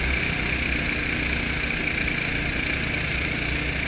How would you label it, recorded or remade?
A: recorded